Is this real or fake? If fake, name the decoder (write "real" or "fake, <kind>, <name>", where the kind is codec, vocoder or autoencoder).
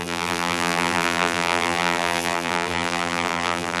fake, vocoder, BigVGAN v2